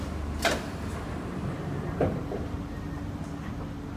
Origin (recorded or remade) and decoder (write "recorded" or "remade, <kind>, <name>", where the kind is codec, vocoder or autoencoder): recorded